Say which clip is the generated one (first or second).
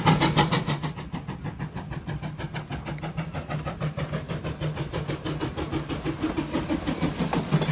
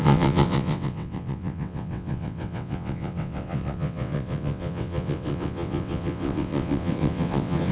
second